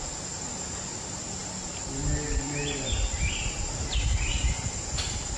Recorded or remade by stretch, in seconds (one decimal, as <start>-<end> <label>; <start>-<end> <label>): 0.0-5.4 recorded